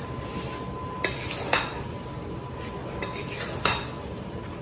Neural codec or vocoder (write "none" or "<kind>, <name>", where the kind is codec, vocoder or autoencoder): none